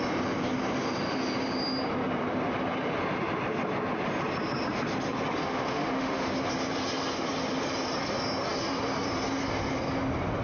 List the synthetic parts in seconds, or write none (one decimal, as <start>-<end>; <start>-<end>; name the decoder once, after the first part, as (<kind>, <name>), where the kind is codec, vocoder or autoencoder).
5.4-6.3 (autoencoder, DAC-VAE)